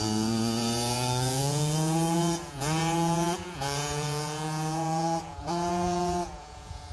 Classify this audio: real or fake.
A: fake